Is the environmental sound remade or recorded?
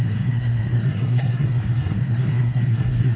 remade